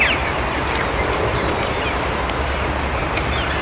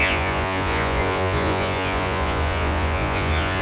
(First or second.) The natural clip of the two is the first